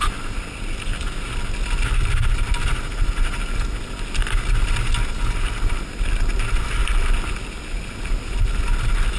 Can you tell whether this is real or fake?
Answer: real